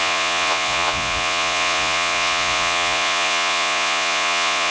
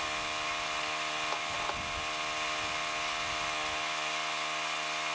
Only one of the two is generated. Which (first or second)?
first